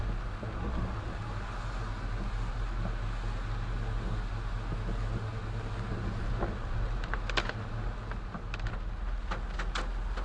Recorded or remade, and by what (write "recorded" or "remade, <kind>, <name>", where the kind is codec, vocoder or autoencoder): recorded